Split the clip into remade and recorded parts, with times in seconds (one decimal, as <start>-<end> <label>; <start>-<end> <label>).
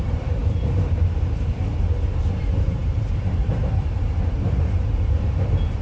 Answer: 0.0-5.8 remade